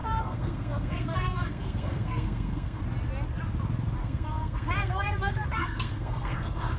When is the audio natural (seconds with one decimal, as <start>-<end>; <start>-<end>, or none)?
2.8-4.0